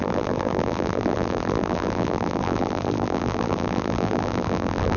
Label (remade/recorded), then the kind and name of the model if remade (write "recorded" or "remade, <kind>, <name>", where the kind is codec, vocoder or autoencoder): remade, vocoder, BigVGAN v2